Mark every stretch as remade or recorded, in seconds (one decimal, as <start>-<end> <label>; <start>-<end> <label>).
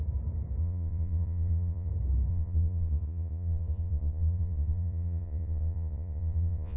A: 0.0-0.6 recorded; 0.6-1.9 remade; 1.9-2.3 recorded; 2.3-6.8 remade